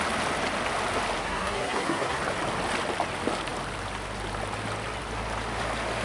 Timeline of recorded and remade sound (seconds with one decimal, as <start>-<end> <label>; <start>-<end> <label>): 0.0-1.2 recorded; 1.2-2.2 remade; 2.2-6.0 recorded